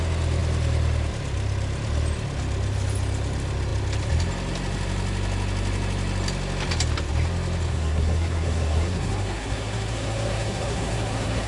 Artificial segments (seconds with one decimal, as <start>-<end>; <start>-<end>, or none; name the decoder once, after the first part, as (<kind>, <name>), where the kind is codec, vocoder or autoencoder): 7.7-11.5 (codec, SNAC)